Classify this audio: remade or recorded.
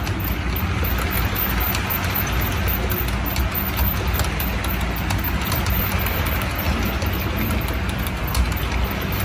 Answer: recorded